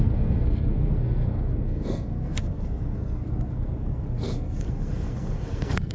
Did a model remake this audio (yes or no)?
yes